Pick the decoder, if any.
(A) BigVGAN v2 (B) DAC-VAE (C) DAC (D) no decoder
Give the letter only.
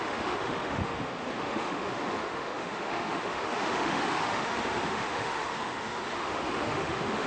B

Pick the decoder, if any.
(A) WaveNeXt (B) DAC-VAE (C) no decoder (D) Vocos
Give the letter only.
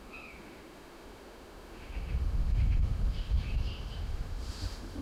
B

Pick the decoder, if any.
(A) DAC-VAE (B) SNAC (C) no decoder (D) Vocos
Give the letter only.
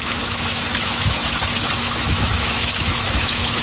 A